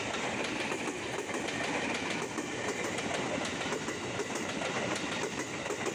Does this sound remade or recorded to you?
recorded